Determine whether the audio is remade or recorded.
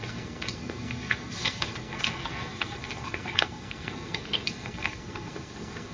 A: remade